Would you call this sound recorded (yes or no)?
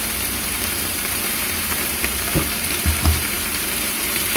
no